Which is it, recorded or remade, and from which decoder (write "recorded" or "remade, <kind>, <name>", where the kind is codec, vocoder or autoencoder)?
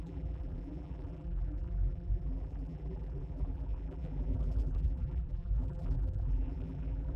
remade, vocoder, BigVGAN v2